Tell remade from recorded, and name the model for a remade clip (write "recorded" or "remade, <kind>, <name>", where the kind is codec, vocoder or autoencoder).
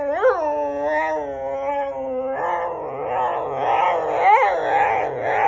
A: recorded